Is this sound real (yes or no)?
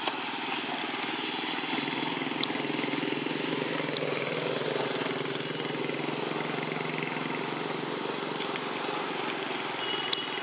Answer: yes